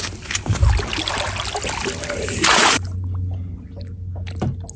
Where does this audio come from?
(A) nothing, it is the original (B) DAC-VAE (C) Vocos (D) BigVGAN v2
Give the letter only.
A